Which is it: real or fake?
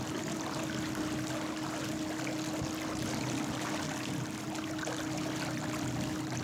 real